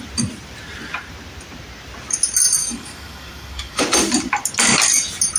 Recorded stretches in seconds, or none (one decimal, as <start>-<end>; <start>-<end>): 0.0-2.6; 3.8-5.4